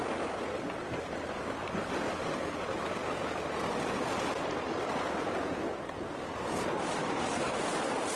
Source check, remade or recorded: recorded